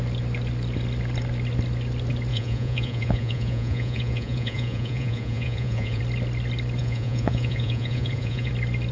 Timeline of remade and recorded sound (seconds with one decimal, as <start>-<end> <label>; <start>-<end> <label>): 0.0-2.3 recorded; 2.3-6.0 remade; 6.0-6.8 recorded; 6.8-8.5 remade; 8.5-8.9 recorded